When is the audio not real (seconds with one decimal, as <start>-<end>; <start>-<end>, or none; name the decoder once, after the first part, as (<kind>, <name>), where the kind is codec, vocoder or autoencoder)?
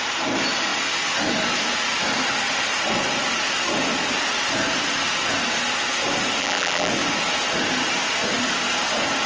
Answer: 6.4-6.9 (vocoder, BigVGAN v2)